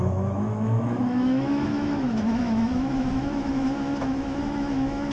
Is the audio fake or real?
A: fake